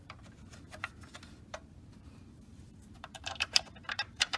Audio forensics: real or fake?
fake